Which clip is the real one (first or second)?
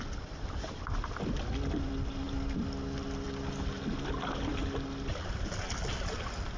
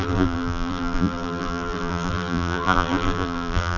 first